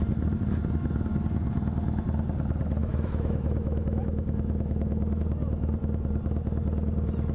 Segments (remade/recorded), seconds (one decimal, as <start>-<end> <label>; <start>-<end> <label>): 0.0-2.8 recorded; 2.8-5.2 remade; 5.2-7.3 recorded